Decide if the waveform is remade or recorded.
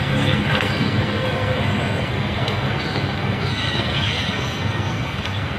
remade